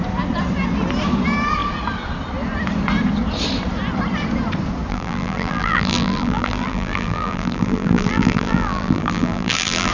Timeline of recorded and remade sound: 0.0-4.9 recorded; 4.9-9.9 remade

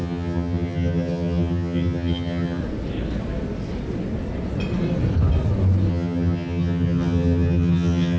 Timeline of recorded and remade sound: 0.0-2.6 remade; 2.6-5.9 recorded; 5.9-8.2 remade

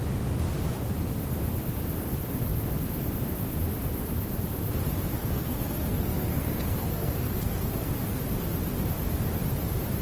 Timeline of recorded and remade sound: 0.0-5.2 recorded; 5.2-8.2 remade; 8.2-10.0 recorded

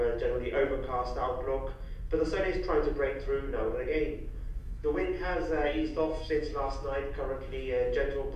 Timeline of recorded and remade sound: 0.0-4.6 recorded; 4.6-7.0 remade; 7.0-8.4 recorded

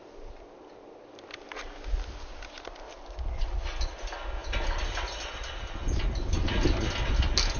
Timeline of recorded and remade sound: 0.0-4.4 recorded; 4.4-5.9 remade; 5.9-7.6 recorded

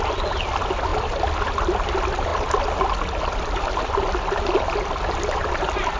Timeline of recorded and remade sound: 0.0-6.0 recorded